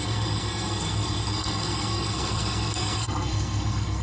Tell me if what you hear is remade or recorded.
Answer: remade